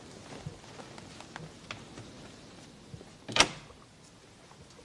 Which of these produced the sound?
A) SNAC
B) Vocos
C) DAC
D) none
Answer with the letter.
D